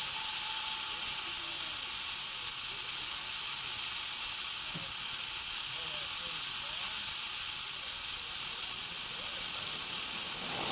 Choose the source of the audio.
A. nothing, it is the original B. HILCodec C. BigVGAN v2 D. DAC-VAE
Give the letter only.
A